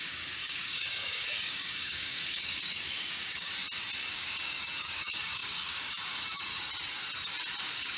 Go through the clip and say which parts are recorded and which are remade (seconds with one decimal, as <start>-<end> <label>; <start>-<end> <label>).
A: 0.0-3.5 remade; 3.5-4.1 recorded; 4.1-6.5 remade; 6.5-7.6 recorded; 7.6-8.0 remade